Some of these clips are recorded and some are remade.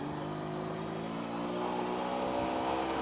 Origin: recorded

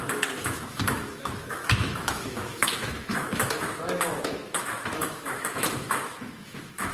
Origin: remade